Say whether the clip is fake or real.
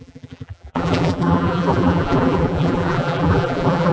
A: fake